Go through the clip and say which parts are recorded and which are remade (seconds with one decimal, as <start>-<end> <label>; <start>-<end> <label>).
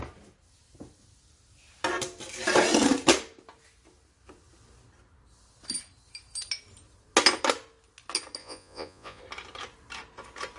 0.0-8.4 recorded; 8.4-9.2 remade; 9.2-10.6 recorded